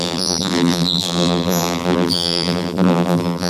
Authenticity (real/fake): fake